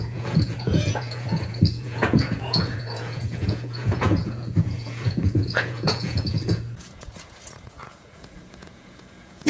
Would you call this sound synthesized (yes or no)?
yes